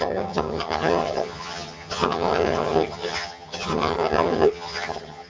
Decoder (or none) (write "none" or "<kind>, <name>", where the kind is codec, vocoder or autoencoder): vocoder, HiFi-GAN